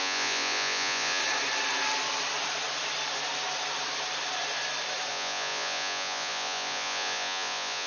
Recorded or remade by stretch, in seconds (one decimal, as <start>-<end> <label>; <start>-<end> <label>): 0.0-1.2 remade; 1.2-5.1 recorded; 5.1-7.9 remade